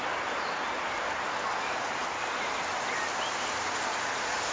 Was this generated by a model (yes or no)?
no